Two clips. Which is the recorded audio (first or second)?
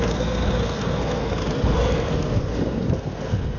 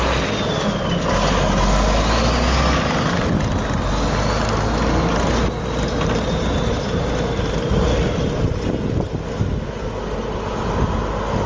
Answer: second